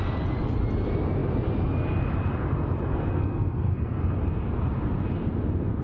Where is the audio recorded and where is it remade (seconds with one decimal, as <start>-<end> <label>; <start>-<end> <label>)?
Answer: 0.0-2.9 recorded; 2.9-4.0 remade; 4.0-5.8 recorded